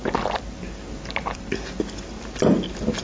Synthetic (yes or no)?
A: no